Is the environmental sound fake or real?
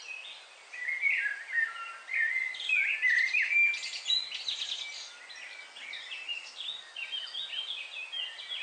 real